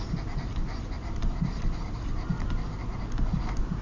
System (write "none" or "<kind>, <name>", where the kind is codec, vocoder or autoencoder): none